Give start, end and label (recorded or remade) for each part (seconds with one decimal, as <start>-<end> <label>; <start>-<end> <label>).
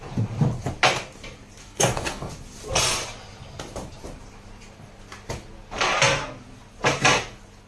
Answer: 0.0-1.6 recorded; 1.6-2.3 remade; 2.3-7.7 recorded